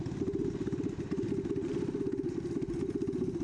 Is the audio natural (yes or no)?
yes